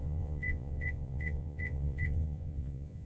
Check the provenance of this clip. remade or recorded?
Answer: remade